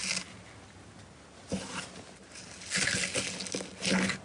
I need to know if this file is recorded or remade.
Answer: recorded